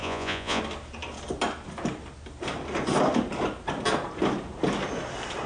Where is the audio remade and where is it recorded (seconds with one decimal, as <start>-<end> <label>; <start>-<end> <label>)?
0.0-0.6 remade; 0.6-5.5 recorded